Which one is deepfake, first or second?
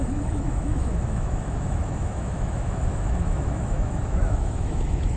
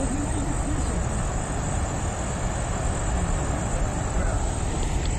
first